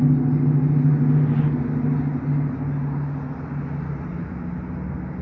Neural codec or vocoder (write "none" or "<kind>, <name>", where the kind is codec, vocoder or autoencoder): none